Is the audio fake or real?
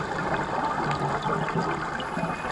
real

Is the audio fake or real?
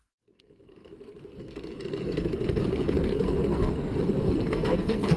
fake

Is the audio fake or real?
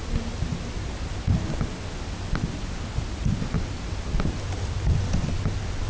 real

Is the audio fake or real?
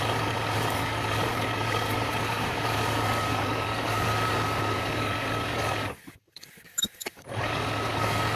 fake